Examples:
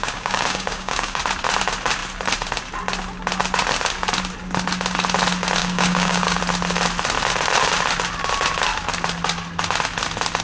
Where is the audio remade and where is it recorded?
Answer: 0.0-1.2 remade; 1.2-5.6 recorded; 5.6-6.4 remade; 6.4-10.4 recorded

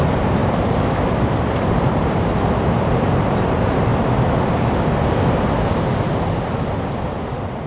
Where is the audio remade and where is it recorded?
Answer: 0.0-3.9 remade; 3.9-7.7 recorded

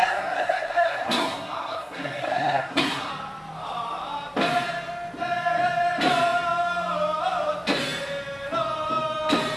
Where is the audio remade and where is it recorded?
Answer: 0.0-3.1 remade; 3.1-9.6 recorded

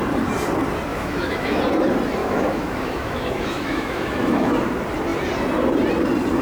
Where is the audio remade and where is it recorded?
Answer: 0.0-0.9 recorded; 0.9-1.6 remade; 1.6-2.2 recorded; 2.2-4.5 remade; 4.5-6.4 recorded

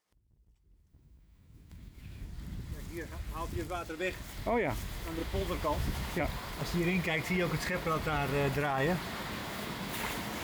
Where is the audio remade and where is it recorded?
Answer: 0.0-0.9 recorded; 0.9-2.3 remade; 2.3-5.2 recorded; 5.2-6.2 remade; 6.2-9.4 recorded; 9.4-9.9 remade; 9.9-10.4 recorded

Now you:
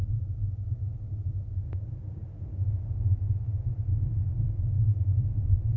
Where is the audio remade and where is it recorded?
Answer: 0.0-5.8 recorded